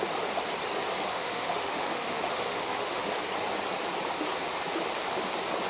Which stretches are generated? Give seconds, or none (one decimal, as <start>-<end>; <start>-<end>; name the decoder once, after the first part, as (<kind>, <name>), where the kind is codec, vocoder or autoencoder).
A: 1.1-3.1 (autoencoder, DAC-VAE)